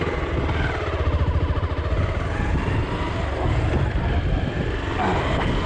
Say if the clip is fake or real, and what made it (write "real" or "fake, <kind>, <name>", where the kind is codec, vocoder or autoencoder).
real